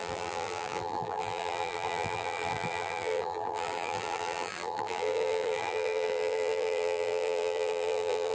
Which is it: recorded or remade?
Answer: remade